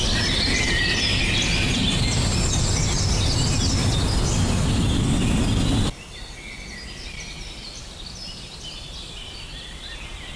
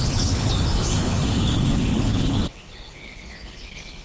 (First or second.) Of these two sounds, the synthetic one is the second